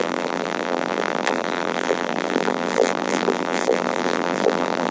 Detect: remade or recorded remade